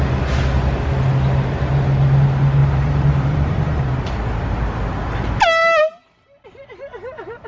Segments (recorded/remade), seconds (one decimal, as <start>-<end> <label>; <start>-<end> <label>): 0.0-2.6 recorded; 2.6-3.8 remade; 3.8-7.5 recorded